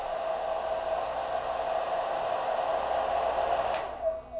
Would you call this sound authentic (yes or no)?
yes